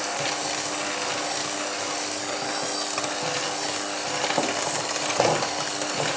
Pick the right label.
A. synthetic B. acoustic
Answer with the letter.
B